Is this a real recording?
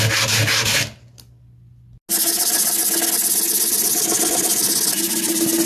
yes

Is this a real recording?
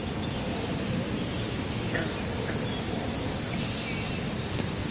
yes